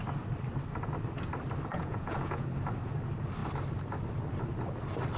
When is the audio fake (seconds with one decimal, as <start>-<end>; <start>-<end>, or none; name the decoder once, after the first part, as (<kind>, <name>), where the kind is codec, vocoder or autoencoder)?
1.7-2.5 (vocoder, Vocos)